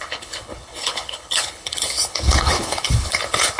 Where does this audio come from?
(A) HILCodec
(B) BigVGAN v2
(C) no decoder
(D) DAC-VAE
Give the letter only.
A